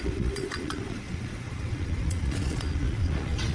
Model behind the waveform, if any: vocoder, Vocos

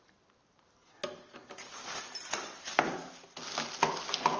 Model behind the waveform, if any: none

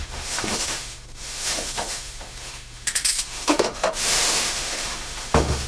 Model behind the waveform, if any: autoencoder, DAC-VAE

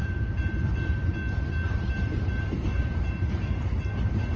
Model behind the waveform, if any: vocoder, BigVGAN v2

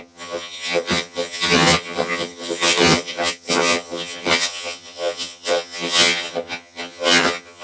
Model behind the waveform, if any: vocoder, HiFi-GAN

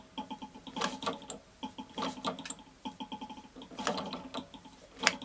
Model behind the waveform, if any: none